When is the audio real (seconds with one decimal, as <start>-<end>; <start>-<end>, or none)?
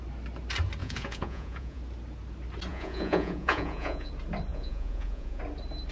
0.0-0.8; 1.8-2.7; 4.1-4.5; 5.4-5.9